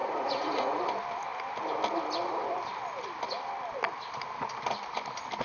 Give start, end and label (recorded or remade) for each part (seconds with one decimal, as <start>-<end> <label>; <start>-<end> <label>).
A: 0.0-0.8 remade; 0.8-5.4 recorded